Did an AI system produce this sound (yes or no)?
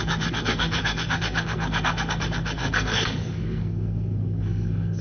yes